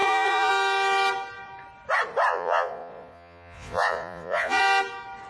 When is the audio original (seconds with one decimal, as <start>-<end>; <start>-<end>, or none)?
0.5-2.3; 4.6-5.3